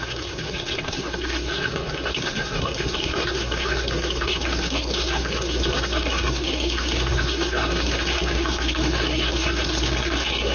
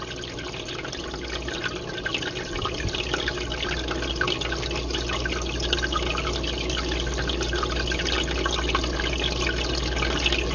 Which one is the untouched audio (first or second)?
second